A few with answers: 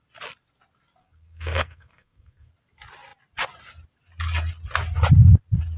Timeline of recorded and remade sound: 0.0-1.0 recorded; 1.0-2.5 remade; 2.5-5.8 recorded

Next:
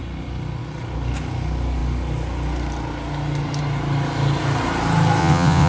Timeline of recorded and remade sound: 0.0-5.2 recorded; 5.2-5.7 remade

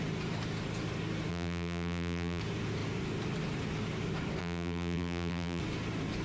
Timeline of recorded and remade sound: 0.0-1.3 recorded; 1.3-2.4 remade; 2.4-4.4 recorded; 4.4-5.6 remade; 5.6-6.2 recorded

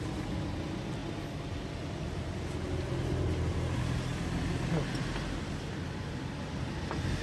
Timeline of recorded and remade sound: 0.0-1.0 recorded; 1.0-3.0 remade; 3.0-7.2 recorded

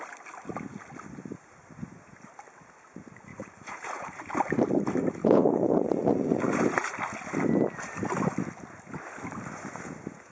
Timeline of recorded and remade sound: 0.0-3.3 recorded; 3.3-4.3 remade; 4.3-5.2 recorded; 5.2-6.5 remade; 6.5-10.3 recorded